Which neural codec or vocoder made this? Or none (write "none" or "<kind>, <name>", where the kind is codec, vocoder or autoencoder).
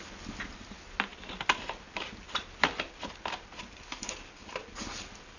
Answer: none